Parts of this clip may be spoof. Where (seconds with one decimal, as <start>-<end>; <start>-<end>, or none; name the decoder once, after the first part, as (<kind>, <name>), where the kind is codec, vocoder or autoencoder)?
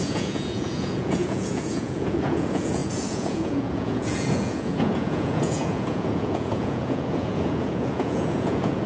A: 0.0-8.9 (vocoder, Vocos)